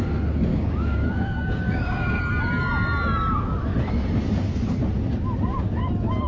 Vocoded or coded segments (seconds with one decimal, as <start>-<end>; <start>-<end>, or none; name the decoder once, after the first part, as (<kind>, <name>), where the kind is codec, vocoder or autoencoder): 0.5-2.2 (codec, DAC)